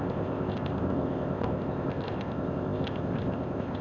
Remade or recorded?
remade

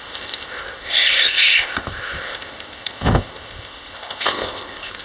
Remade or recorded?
remade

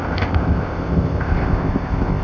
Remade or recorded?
remade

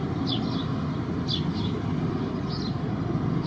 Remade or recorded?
recorded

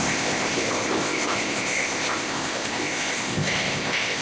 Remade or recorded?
remade